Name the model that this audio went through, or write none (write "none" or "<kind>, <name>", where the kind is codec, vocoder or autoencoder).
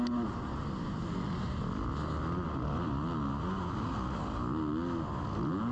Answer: none